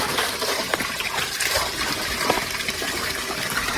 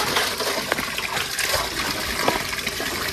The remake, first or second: first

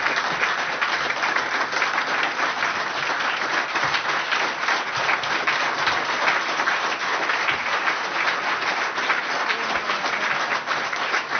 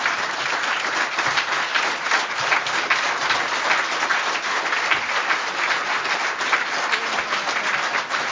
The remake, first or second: second